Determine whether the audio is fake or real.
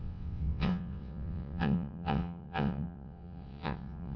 fake